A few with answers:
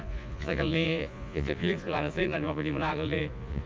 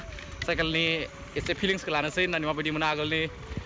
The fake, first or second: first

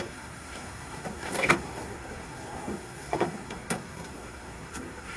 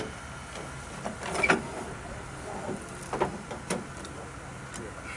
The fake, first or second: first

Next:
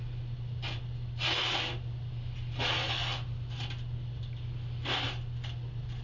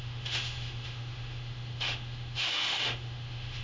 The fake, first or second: second